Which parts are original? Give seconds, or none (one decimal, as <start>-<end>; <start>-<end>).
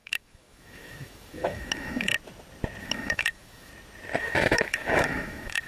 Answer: 2.1-2.8; 3.7-4.2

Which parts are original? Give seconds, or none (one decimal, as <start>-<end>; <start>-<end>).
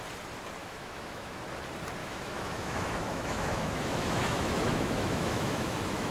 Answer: 0.0-0.6; 1.4-2.0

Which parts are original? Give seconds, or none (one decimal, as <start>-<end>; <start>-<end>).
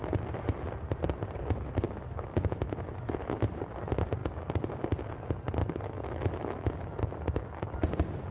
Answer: 0.0-1.4; 3.6-5.6; 6.7-8.3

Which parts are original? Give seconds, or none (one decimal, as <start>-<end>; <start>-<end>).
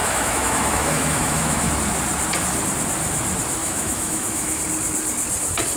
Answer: 1.7-3.6; 4.6-5.8